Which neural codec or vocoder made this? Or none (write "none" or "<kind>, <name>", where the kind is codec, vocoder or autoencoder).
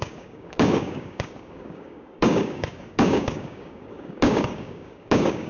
codec, DAC